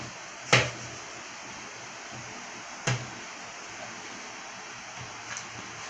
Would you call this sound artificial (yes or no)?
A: no